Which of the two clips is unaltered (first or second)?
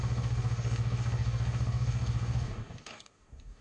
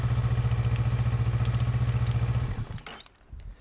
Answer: second